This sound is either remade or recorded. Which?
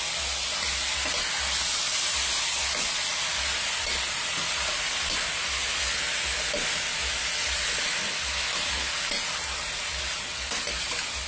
recorded